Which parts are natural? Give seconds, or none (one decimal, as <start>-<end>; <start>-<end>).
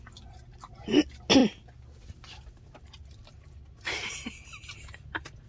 0.0-5.5